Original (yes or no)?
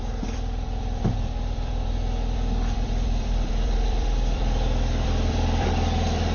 no